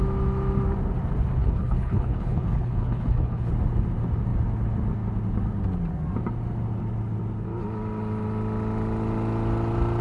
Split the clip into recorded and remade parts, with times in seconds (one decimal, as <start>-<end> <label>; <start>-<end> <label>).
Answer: 0.0-1.4 recorded; 1.4-3.5 remade; 3.5-10.0 recorded